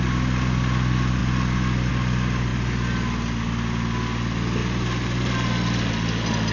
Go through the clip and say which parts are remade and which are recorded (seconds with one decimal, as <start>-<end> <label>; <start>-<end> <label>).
0.0-1.2 recorded; 1.2-1.9 remade; 1.9-2.5 recorded; 2.5-3.4 remade; 3.4-6.5 recorded